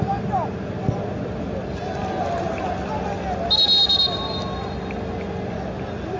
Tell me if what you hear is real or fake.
real